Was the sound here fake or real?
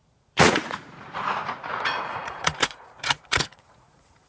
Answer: fake